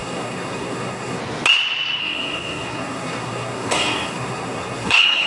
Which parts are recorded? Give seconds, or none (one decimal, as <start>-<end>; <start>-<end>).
1.2-2.0